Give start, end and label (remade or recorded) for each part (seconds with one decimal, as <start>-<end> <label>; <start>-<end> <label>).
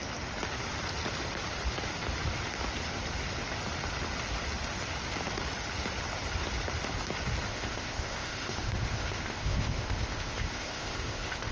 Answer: 0.0-7.5 recorded; 7.5-11.5 remade